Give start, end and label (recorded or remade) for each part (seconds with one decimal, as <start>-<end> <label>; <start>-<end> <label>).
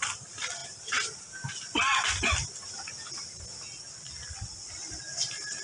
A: 0.0-5.6 recorded